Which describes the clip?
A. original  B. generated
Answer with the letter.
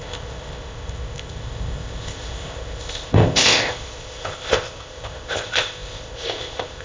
B